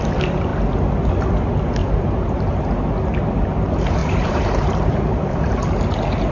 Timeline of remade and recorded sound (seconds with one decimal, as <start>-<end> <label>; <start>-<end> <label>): 0.0-1.8 recorded; 1.8-2.6 remade; 2.6-4.0 recorded; 4.0-5.4 remade; 5.4-6.3 recorded